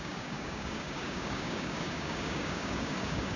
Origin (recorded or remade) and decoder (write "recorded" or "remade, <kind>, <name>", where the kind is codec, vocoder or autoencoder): remade, codec, DAC